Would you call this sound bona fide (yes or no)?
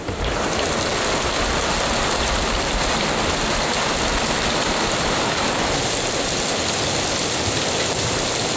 yes